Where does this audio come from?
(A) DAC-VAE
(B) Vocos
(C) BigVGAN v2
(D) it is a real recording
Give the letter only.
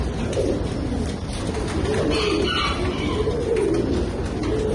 D